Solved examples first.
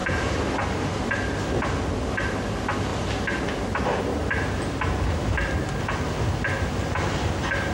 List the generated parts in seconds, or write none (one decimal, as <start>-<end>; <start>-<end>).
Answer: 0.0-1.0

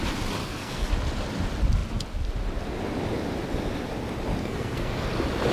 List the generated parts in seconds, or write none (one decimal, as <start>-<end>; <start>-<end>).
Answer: 0.4-0.9; 4.4-5.1

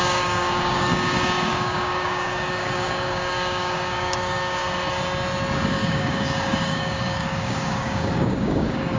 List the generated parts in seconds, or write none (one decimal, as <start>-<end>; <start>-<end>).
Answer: 0.0-4.6; 5.7-9.0